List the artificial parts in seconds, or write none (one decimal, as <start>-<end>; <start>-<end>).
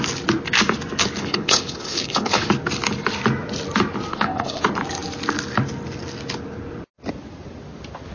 1.2-2.5; 4.1-4.6